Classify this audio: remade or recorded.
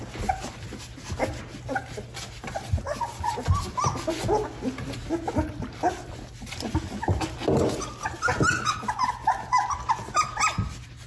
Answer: recorded